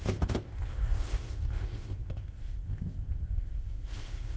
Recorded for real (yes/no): no